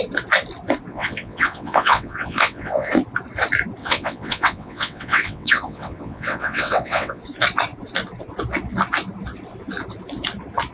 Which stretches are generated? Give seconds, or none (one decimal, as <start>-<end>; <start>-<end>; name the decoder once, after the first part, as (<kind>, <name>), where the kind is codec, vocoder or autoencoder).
0.9-2.9 (vocoder, WaveNeXt); 3.8-7.2